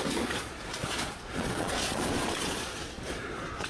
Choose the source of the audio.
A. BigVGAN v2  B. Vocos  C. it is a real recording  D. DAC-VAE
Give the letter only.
B